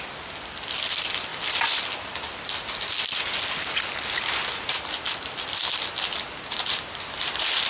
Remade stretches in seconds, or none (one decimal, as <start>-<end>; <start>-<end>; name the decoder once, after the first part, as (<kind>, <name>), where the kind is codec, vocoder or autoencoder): none